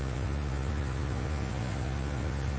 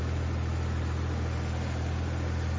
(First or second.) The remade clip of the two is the first